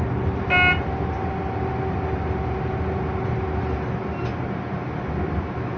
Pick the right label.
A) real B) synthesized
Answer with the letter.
A